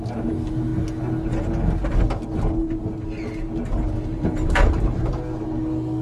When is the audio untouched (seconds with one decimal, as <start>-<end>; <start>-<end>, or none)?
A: 0.0-4.1; 5.1-6.0